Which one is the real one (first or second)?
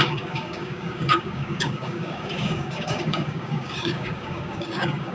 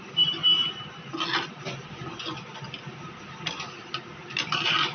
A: second